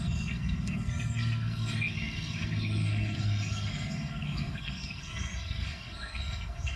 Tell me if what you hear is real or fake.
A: fake